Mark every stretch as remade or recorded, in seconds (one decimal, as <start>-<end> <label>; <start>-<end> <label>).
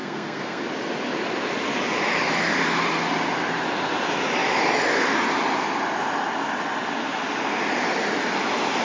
0.0-0.6 remade; 0.6-8.8 recorded